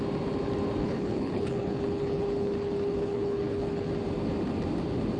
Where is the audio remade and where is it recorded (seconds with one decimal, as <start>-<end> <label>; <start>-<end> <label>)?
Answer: 0.0-0.8 recorded; 0.8-3.9 remade; 3.9-5.2 recorded